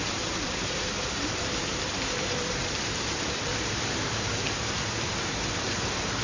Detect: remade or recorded remade